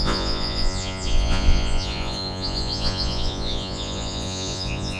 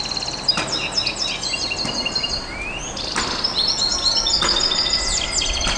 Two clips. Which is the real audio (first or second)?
second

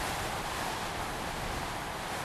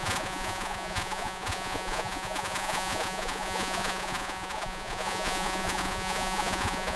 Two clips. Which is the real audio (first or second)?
first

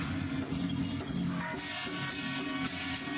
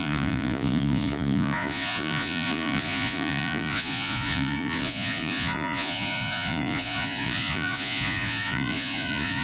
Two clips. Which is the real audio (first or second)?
first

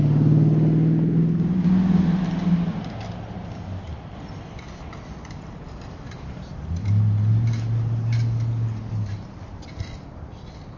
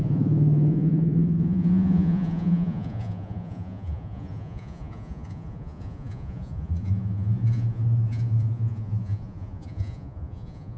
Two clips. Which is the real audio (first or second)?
first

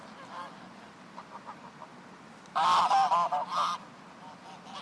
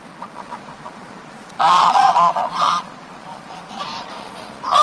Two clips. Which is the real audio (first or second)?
first